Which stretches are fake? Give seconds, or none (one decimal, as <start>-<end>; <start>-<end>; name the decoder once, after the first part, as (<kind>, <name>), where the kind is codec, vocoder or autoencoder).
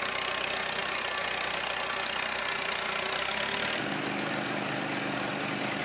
none